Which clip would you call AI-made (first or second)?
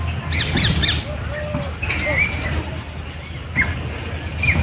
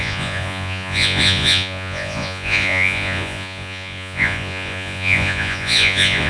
second